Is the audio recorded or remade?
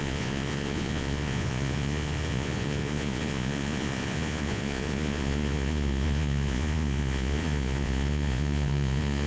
remade